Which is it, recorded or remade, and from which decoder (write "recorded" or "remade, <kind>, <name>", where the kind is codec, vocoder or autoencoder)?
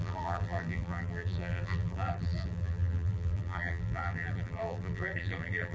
remade, vocoder, BigVGAN v2